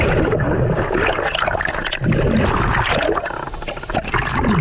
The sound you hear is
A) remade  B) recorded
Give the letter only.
B